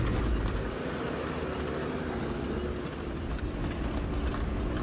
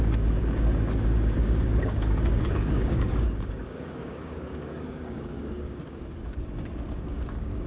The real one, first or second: first